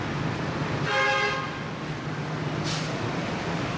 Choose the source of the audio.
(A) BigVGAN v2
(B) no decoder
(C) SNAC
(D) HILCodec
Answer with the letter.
B